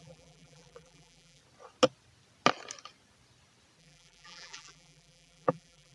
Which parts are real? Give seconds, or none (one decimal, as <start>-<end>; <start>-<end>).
1.4-3.8